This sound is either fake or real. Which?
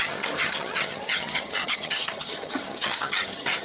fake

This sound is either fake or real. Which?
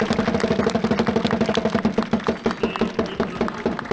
real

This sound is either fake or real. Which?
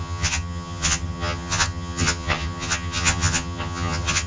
fake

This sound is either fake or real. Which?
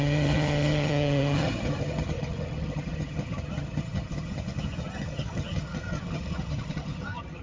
fake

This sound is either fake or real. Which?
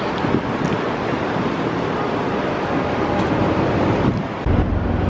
real